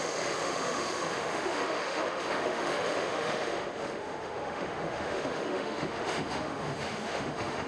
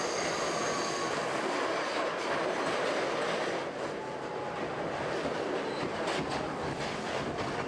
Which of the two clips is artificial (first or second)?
first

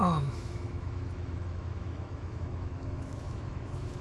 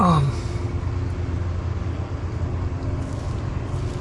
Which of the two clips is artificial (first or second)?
first